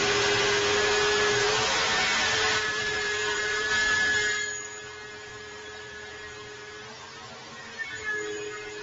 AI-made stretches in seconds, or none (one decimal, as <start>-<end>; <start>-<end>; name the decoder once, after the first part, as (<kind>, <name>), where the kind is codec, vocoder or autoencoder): 2.6-3.7 (vocoder, BigVGAN v2); 5.3-6.2